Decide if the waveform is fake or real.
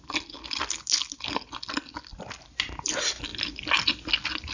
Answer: real